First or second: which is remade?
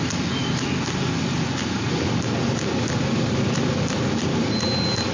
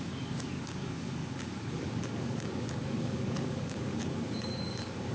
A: second